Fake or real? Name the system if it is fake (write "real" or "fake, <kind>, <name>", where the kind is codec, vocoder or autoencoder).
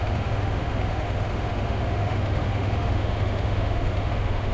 fake, autoencoder, DAC-VAE